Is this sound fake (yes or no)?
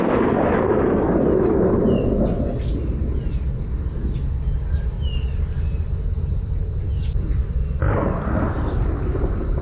no